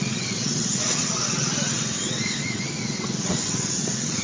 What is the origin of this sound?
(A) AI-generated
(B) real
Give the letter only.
A